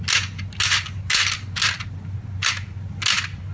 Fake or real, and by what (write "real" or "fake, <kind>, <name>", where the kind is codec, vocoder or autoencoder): real